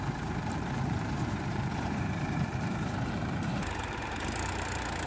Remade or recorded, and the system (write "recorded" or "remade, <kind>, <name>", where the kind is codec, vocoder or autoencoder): remade, vocoder, BigVGAN v2